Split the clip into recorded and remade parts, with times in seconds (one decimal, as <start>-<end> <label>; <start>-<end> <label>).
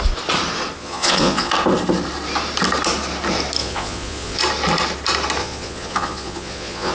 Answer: 0.0-0.8 recorded; 0.8-1.5 remade; 1.5-3.6 recorded; 3.6-4.4 remade; 4.4-5.4 recorded; 5.4-6.9 remade